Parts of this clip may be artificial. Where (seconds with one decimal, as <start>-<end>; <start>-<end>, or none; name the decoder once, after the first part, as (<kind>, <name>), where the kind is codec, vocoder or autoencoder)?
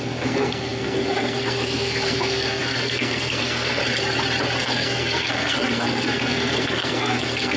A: 0.0-3.8 (codec, SNAC); 4.6-7.6